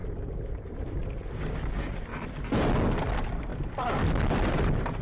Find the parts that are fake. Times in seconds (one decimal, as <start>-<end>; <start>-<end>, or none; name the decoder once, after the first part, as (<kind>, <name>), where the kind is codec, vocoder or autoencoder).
none